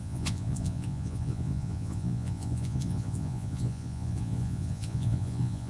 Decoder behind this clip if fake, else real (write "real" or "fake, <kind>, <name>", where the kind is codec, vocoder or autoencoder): fake, vocoder, Vocos